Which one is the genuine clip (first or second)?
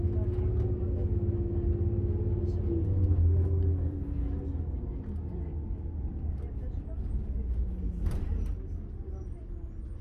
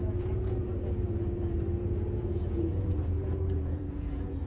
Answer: first